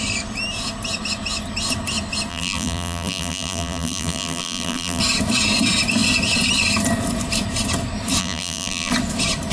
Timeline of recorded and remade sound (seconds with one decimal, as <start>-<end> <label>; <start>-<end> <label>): 0.0-2.3 recorded; 2.3-5.0 remade; 5.0-8.2 recorded; 8.2-8.9 remade; 8.9-9.5 recorded